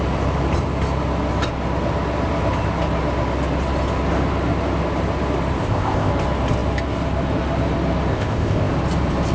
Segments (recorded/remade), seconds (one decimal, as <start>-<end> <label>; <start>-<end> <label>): 0.0-5.6 recorded; 5.6-6.1 remade; 6.1-8.1 recorded; 8.1-8.7 remade; 8.7-9.3 recorded